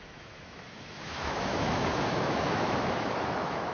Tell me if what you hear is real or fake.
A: fake